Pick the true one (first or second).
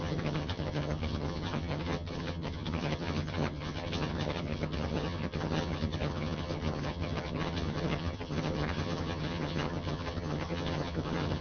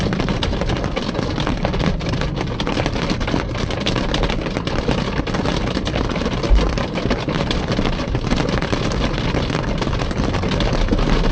second